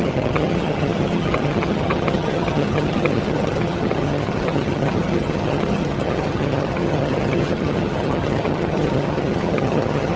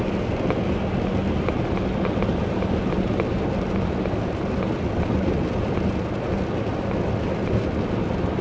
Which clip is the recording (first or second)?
second